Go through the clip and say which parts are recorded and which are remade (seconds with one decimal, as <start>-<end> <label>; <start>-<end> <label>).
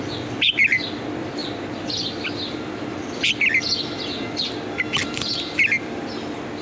0.0-6.6 remade